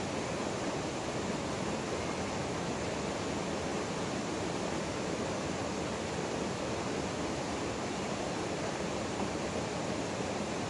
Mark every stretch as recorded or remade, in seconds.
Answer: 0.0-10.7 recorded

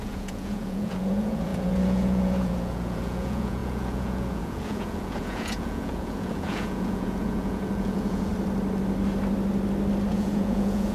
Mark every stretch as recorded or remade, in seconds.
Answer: 0.0-8.3 remade; 8.3-10.1 recorded; 10.1-10.9 remade

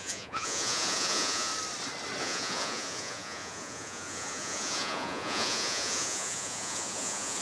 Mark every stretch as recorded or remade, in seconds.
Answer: 0.0-1.5 remade; 1.5-2.2 recorded; 2.2-7.4 remade

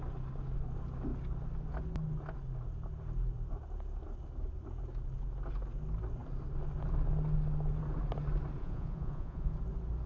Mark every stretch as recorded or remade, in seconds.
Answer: 0.0-8.6 recorded; 8.6-9.5 remade; 9.5-10.1 recorded

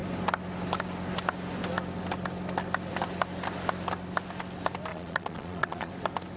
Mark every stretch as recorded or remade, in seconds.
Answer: 0.0-4.9 recorded; 4.9-5.9 remade; 5.9-6.4 recorded

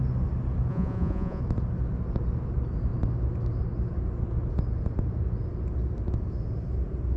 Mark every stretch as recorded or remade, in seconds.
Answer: 0.0-0.7 recorded; 0.7-1.4 remade; 1.4-7.2 recorded